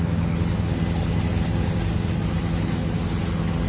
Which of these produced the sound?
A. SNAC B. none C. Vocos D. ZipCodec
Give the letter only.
B